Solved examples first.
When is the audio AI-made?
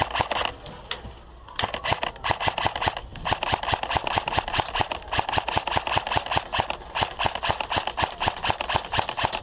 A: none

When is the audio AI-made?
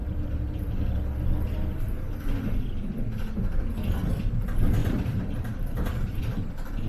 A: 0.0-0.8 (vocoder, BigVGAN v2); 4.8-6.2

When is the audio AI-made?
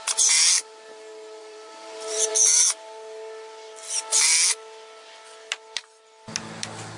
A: 1.4-2.3 (vocoder, BigVGAN v2)